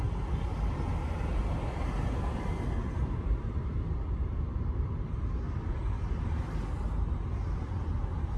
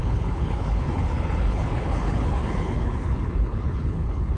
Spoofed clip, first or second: second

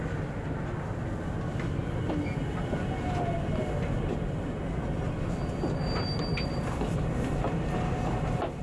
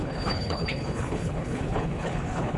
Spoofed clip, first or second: second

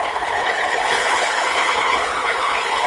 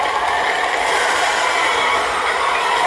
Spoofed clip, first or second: first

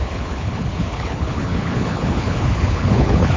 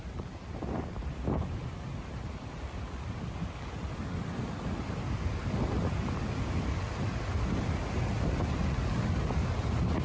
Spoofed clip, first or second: first